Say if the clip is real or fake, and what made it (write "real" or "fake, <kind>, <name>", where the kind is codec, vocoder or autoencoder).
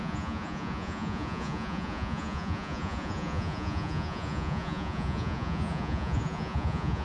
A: fake, vocoder, Vocos